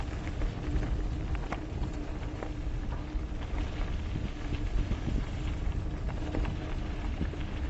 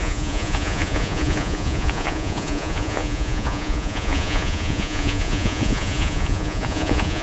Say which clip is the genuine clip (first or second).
first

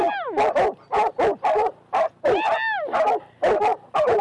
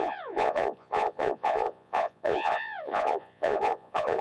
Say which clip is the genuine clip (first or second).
first